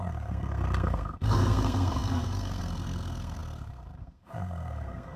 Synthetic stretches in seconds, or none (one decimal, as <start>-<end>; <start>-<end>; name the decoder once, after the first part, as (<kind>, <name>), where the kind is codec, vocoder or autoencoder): 0.0-5.2 (codec, SNAC)